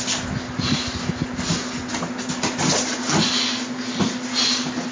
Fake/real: real